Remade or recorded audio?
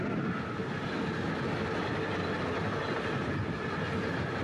recorded